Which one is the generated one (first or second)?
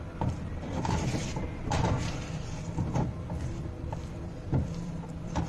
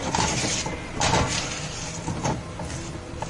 first